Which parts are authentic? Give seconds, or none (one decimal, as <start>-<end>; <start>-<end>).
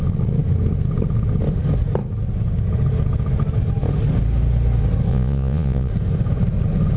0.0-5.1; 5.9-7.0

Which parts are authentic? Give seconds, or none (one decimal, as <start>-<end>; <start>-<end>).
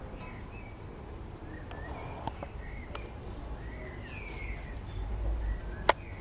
0.0-6.2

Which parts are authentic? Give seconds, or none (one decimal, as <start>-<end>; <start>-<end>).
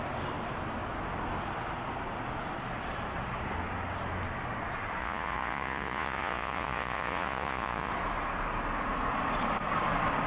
0.0-5.0; 7.9-10.3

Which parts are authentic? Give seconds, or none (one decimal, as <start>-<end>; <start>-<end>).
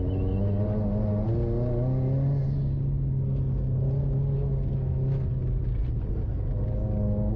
0.0-7.4